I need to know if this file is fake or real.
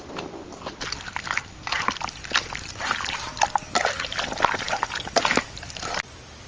real